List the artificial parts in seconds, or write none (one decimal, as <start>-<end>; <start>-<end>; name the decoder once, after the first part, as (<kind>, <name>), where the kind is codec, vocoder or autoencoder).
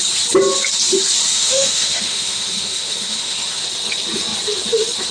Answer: 1.3-3.6 (autoencoder, DAC-VAE)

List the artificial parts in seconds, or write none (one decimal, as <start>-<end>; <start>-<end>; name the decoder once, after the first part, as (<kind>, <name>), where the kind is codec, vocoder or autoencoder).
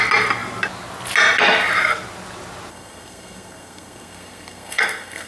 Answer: 2.7-5.3 (codec, SNAC)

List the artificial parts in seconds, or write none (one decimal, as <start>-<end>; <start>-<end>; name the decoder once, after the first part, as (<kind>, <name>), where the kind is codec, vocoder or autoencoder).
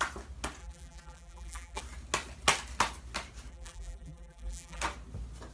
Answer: 0.6-1.8 (vocoder, BigVGAN v2); 3.5-4.8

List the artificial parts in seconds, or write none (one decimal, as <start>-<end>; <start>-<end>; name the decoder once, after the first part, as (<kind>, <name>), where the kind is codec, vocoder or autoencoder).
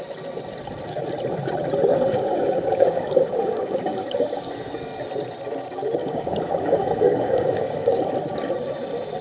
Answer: 1.9-4.4 (codec, DAC); 6.0-8.0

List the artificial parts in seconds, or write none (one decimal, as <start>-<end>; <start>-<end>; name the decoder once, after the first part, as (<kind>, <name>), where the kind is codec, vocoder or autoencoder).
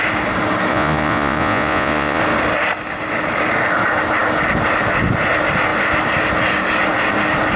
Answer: 0.7-2.2 (vocoder, Vocos)